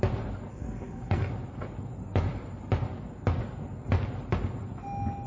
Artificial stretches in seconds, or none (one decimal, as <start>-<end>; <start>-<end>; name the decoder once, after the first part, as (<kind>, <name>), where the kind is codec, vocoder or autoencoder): 0.5-1.3 (codec, SNAC)